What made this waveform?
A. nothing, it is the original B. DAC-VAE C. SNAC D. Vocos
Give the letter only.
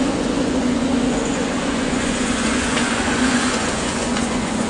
D